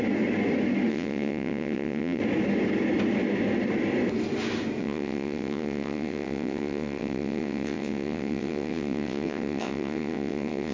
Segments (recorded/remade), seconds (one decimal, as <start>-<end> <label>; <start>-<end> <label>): 0.0-0.9 recorded; 0.9-2.2 remade; 2.2-4.8 recorded; 4.8-10.7 remade